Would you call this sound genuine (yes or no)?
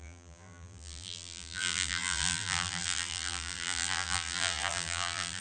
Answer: no